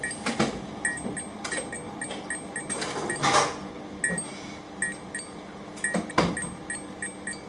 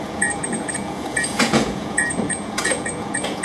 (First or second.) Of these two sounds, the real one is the first